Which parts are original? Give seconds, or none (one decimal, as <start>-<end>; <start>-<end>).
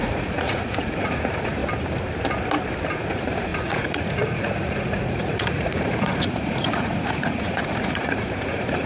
1.6-2.9